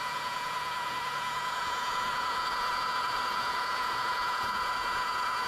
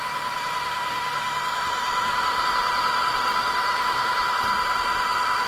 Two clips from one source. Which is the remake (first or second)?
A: first